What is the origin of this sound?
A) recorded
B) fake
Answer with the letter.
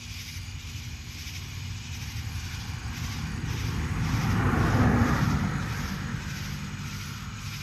A